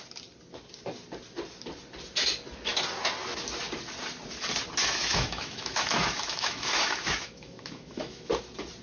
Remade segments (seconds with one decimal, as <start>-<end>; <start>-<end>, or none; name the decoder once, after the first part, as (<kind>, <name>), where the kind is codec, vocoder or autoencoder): 4.8-8.3 (autoencoder, DAC-VAE)

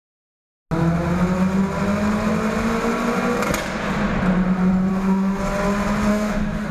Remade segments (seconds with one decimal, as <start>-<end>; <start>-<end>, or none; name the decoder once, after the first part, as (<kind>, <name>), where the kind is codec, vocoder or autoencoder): 4.9-5.4 (autoencoder, DAC-VAE); 6.1-6.7